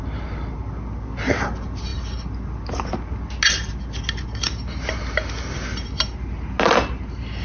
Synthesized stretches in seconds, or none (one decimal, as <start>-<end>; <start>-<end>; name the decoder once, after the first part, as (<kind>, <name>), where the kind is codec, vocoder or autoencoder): none